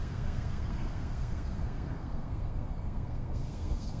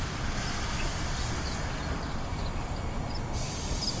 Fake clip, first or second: first